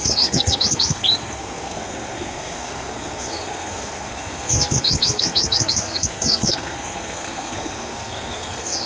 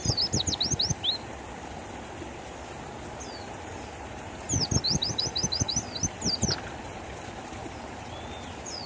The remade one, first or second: first